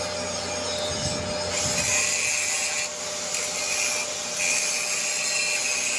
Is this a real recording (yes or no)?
yes